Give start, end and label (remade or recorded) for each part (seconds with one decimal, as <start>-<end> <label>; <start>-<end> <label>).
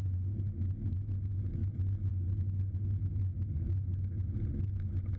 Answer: 0.0-5.2 recorded